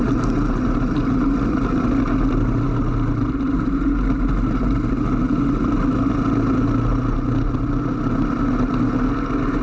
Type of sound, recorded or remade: recorded